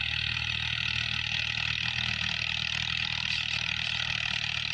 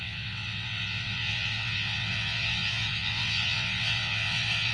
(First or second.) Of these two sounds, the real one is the first